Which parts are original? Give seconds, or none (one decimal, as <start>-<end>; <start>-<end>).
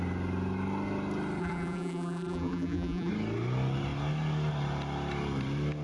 0.0-1.4; 3.1-5.8